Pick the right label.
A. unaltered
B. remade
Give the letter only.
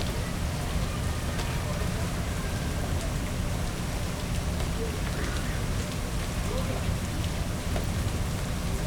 A